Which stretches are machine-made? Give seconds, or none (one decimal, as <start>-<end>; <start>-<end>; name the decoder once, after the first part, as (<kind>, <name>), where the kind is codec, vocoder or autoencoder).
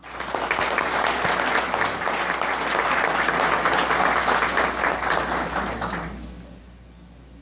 none